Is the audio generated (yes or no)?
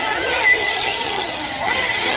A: yes